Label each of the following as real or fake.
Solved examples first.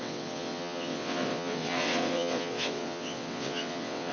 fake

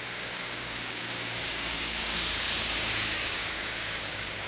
fake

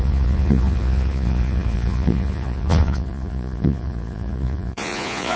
fake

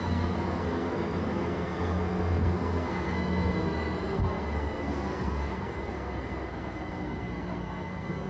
fake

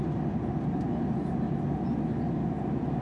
real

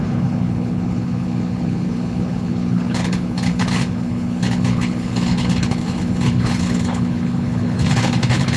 fake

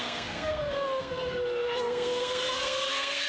fake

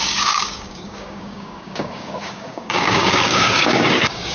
fake